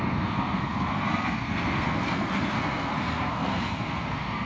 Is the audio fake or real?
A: fake